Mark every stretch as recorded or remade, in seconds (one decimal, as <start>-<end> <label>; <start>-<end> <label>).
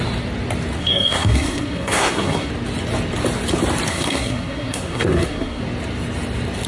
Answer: 0.0-0.8 recorded; 0.8-2.5 remade; 2.5-3.9 recorded; 3.9-5.6 remade; 5.6-6.7 recorded